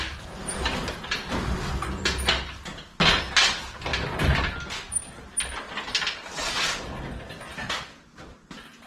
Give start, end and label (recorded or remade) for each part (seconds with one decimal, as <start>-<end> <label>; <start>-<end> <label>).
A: 0.0-8.9 recorded